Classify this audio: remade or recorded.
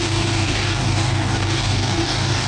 remade